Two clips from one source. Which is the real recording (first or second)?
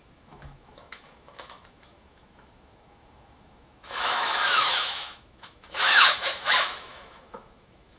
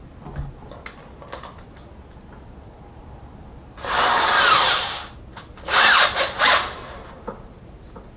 second